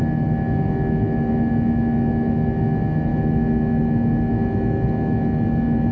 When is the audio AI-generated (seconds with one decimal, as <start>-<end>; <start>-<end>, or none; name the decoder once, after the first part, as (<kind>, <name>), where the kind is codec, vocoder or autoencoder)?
none